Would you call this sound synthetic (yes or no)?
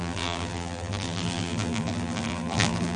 yes